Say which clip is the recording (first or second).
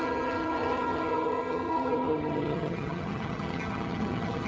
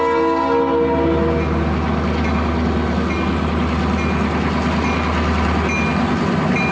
second